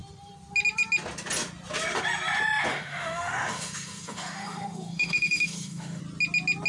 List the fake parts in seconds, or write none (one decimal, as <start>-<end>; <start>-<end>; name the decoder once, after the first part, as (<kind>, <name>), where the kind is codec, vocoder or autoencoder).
2.7-6.0 (autoencoder, DAC-VAE)